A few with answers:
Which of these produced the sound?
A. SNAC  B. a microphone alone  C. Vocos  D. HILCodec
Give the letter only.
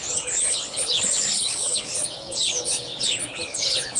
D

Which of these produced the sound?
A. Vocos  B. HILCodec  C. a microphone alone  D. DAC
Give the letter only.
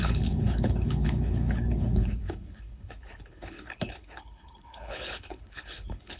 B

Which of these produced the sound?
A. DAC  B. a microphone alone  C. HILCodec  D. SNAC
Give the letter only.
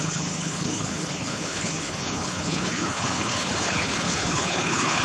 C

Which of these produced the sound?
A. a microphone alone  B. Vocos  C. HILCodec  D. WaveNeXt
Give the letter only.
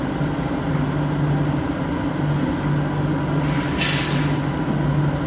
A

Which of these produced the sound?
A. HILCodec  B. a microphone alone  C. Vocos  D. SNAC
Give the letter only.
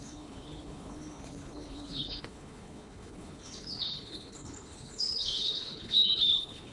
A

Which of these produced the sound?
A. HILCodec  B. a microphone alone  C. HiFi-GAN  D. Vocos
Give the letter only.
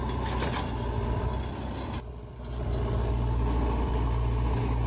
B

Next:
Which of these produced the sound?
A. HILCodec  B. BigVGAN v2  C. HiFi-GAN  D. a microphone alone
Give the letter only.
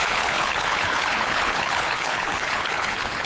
A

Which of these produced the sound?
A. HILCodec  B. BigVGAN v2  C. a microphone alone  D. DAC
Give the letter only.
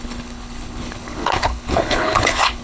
A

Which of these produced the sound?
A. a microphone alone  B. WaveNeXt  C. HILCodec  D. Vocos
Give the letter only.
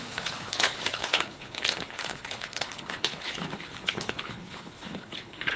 C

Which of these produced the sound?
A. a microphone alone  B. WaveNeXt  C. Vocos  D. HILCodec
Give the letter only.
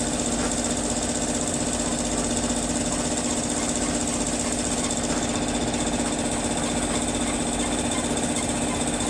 A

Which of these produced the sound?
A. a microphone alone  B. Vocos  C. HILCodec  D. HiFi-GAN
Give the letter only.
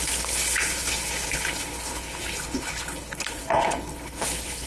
C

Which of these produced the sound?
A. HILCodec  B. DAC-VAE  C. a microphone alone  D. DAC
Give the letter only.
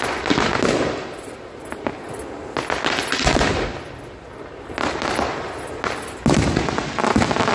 C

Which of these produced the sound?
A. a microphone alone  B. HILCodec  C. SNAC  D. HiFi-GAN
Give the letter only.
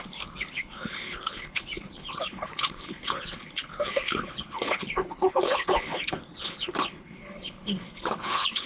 B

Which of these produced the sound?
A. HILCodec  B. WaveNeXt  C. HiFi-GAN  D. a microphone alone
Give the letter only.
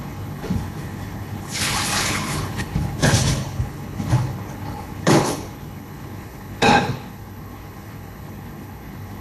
A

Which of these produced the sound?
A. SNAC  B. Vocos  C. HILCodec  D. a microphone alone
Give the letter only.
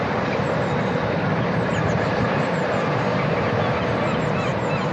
D